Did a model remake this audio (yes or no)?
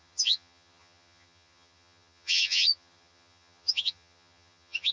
yes